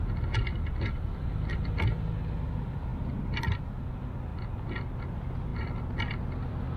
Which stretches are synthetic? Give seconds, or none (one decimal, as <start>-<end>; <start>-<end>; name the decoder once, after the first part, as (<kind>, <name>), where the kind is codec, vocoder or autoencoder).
none